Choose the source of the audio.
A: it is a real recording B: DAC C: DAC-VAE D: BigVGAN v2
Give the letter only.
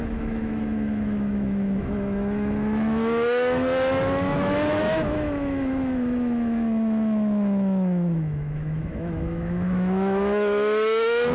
C